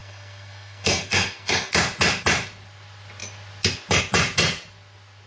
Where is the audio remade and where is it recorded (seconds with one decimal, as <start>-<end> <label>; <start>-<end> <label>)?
0.0-1.7 remade; 1.7-5.3 recorded